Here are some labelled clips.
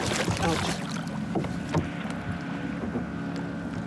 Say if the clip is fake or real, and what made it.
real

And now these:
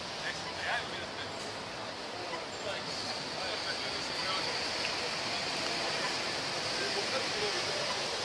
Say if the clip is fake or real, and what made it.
real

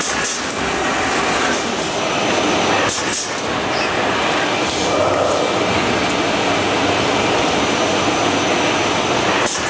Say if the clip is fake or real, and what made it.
real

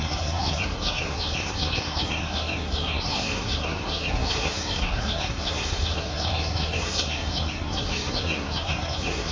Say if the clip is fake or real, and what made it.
fake, codec, SNAC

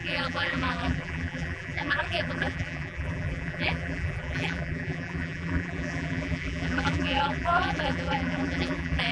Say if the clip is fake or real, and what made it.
fake, vocoder, BigVGAN v2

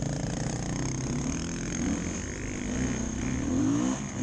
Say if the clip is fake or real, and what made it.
real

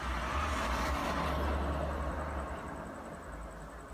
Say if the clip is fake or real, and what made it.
real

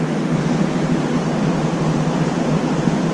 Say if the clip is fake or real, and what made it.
fake, vocoder, BigVGAN v2